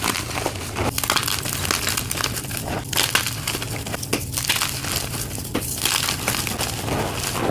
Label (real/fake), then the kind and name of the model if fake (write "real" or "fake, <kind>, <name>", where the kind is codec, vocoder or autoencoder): real